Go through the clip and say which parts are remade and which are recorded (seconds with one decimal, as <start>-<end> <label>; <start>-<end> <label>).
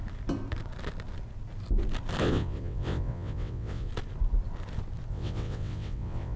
0.0-2.2 recorded; 2.2-3.9 remade; 3.9-5.1 recorded; 5.1-6.4 remade